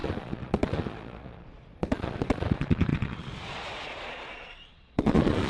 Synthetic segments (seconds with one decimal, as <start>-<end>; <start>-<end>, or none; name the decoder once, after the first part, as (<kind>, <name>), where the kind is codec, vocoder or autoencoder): 0.0-5.5 (vocoder, Vocos)